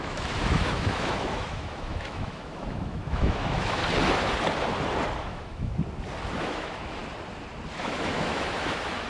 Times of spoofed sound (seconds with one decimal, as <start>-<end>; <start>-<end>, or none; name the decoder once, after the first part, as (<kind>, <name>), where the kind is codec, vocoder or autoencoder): 0.0-3.8 (autoencoder, DAC-VAE); 5.2-5.7; 6.4-7.0; 7.8-9.1